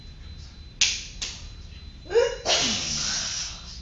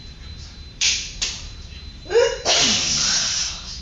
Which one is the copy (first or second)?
second